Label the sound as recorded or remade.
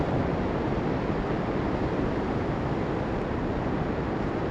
recorded